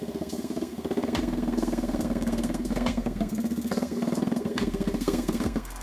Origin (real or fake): fake